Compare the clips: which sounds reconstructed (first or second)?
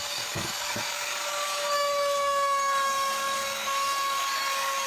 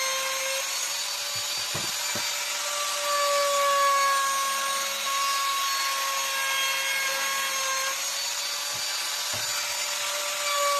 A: first